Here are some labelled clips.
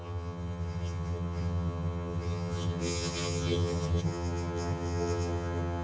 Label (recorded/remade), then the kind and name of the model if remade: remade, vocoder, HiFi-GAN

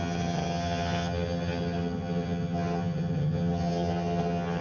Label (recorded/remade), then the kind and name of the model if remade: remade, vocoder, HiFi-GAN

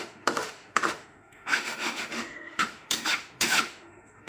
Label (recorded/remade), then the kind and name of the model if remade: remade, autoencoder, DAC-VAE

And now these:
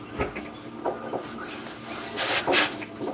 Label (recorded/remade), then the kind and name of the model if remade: recorded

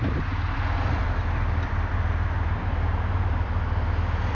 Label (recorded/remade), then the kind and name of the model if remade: recorded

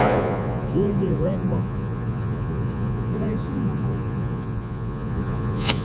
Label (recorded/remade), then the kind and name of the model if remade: remade, vocoder, Vocos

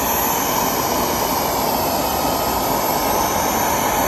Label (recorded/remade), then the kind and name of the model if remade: recorded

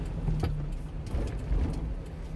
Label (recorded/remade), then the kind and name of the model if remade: recorded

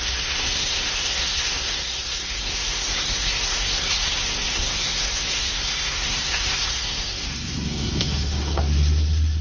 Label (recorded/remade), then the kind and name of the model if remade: remade, codec, SNAC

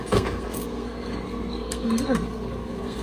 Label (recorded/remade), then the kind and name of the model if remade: remade, codec, SNAC